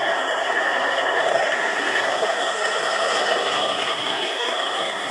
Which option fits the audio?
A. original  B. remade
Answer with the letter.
B